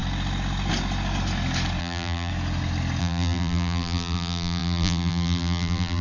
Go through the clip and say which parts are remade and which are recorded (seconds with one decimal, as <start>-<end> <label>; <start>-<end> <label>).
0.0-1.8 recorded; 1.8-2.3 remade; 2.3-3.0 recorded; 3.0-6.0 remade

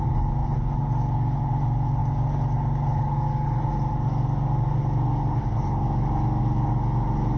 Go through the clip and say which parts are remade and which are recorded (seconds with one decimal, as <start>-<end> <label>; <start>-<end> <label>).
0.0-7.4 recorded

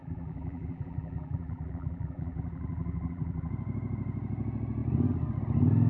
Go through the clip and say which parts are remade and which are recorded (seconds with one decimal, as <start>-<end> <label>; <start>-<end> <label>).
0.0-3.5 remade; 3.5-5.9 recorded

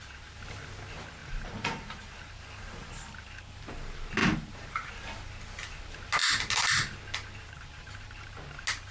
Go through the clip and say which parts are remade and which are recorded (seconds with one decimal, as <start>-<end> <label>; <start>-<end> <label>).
0.0-1.2 recorded; 1.2-2.4 remade; 2.4-4.2 recorded; 4.2-4.9 remade; 4.9-8.9 recorded

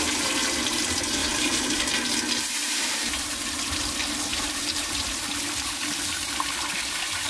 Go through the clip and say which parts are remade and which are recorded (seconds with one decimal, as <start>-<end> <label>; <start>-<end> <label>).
0.0-1.2 recorded; 1.2-1.8 remade; 1.8-2.6 recorded; 2.6-3.4 remade; 3.4-4.3 recorded; 4.3-4.9 remade; 4.9-7.3 recorded